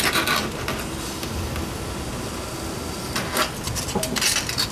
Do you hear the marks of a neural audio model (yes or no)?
no